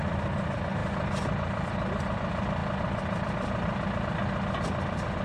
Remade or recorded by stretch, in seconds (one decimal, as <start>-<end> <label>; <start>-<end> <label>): 0.0-5.2 recorded

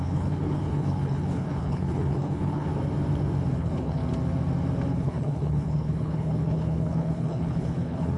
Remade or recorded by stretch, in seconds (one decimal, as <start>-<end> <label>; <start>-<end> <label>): 0.0-2.7 remade; 2.7-3.6 recorded; 3.6-4.0 remade; 4.0-4.9 recorded; 4.9-8.2 remade

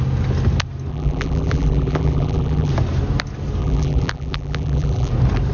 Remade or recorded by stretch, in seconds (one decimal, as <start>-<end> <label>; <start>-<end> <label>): 0.0-0.9 recorded; 0.9-2.7 remade; 2.7-3.6 recorded; 3.6-5.1 remade; 5.1-5.5 recorded

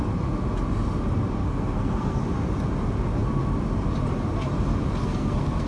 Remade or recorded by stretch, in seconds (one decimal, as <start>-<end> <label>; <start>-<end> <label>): 0.0-1.4 recorded; 1.4-2.2 remade; 2.2-5.0 recorded; 5.0-5.7 remade

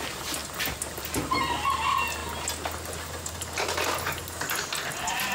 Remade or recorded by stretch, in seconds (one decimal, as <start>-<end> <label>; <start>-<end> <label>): 0.0-5.3 recorded

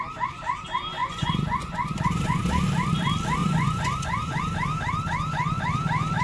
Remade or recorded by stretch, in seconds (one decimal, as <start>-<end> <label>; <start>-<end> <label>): 0.0-1.0 recorded; 1.0-2.5 remade; 2.5-3.4 recorded; 3.4-4.4 remade; 4.4-6.2 recorded

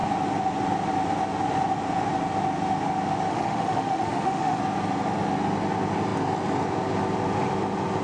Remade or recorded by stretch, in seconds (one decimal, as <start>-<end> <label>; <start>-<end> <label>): 0.0-3.3 recorded; 3.3-4.6 remade; 4.6-8.0 recorded